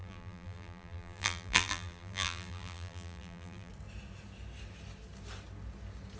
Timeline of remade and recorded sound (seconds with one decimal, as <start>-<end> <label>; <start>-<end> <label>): 0.0-3.7 remade; 3.7-6.2 recorded